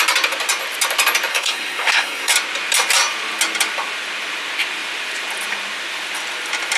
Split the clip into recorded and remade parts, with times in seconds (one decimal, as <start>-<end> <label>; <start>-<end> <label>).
0.0-1.3 recorded; 1.3-2.3 remade; 2.3-6.8 recorded